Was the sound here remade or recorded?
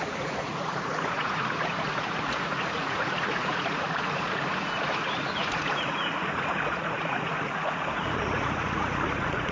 remade